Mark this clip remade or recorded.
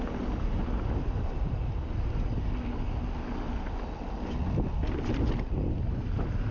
recorded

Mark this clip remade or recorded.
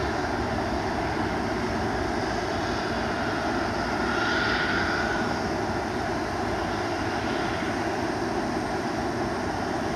recorded